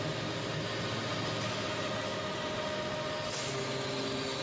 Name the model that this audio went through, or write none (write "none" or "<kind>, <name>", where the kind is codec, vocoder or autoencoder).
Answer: none